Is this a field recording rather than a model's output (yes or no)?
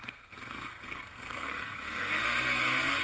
no